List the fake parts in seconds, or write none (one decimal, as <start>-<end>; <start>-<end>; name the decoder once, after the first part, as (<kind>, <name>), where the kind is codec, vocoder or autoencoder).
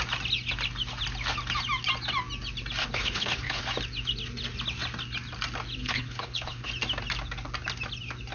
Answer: 2.8-3.6 (codec, HILCodec); 5.8-6.7